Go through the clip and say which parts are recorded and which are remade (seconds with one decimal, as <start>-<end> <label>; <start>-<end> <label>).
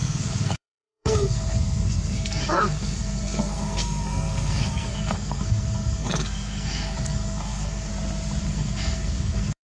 0.0-7.9 remade; 7.9-8.4 recorded; 8.4-9.7 remade